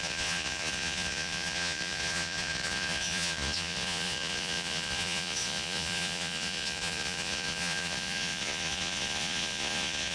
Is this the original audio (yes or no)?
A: no